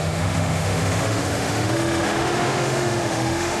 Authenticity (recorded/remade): remade